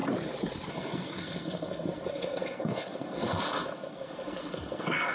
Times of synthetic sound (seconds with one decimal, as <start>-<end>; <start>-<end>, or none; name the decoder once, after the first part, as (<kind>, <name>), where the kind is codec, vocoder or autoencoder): 0.7-5.1 (codec, SNAC)